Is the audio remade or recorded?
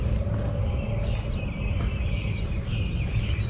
recorded